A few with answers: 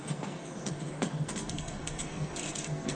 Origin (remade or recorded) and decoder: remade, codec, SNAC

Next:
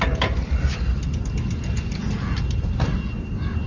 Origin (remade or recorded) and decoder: recorded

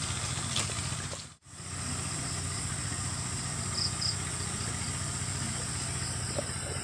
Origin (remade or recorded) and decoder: recorded